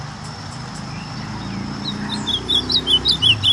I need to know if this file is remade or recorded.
recorded